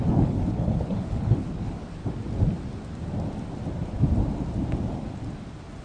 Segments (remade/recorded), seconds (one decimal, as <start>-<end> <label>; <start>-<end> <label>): 0.0-2.0 remade; 2.0-5.8 recorded